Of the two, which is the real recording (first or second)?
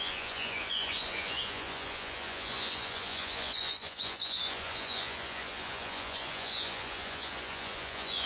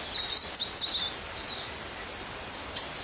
second